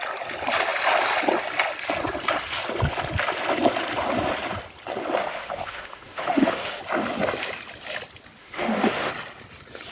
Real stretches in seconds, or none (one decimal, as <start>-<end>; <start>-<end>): 0.0-5.2; 6.8-8.4; 9.1-9.9